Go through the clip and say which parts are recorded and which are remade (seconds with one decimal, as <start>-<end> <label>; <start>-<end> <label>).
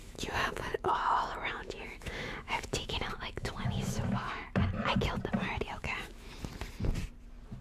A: 0.0-4.6 remade; 4.6-5.7 recorded; 5.7-6.3 remade; 6.3-7.6 recorded